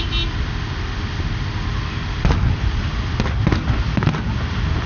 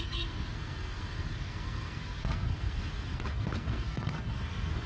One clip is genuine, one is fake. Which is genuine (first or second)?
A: first